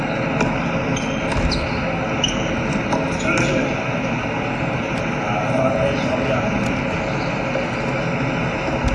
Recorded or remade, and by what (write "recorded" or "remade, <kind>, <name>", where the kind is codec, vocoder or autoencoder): recorded